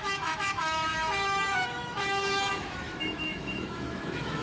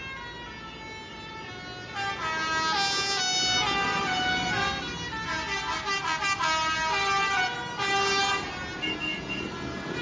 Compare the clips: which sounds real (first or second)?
second